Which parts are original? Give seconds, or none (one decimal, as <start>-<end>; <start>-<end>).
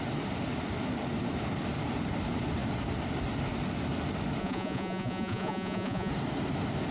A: 0.0-4.4; 6.1-6.9